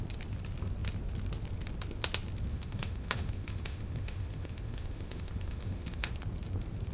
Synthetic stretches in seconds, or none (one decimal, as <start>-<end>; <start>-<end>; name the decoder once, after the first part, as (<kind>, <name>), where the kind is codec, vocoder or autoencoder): 2.5-6.1 (autoencoder, DAC-VAE)